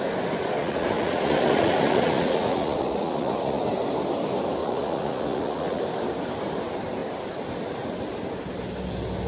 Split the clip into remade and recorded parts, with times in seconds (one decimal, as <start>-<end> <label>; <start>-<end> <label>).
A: 0.0-0.6 recorded; 0.6-3.6 remade; 3.6-4.6 recorded; 4.6-5.8 remade; 5.8-9.3 recorded